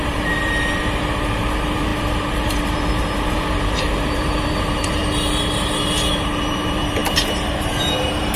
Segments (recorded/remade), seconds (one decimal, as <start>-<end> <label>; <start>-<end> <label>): 0.0-5.0 remade; 5.0-6.1 recorded; 6.1-8.4 remade